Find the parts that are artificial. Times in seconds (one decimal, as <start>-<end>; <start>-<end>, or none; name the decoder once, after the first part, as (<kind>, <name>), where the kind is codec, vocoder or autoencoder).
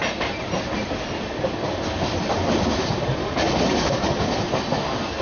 3.2-4.1 (codec, DAC)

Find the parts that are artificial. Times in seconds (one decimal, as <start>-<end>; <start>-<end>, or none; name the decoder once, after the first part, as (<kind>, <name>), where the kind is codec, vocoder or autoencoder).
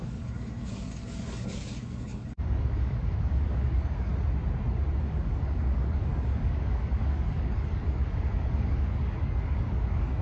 0.0-4.1 (codec, DAC); 5.0-10.2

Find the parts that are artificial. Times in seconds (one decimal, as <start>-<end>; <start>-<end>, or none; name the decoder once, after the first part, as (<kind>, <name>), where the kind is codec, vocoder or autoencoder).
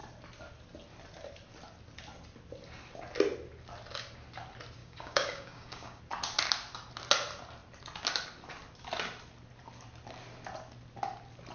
4.8-6.0 (codec, DAC)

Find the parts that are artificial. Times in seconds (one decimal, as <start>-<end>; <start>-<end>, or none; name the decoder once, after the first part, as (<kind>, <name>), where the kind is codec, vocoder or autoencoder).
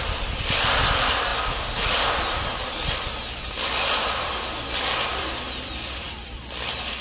none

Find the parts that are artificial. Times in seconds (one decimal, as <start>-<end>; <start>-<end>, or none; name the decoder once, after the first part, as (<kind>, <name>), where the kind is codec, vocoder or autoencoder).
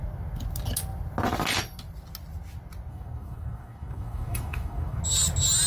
2.9-5.0 (codec, DAC)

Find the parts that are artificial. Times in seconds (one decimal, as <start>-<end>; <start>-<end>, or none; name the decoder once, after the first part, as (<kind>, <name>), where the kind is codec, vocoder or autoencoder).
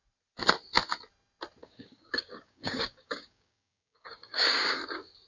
1.6-4.8 (codec, DAC)